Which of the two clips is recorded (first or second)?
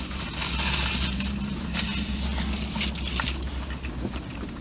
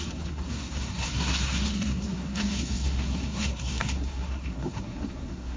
first